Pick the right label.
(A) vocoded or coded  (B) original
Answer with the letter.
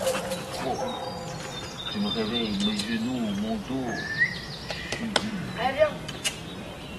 B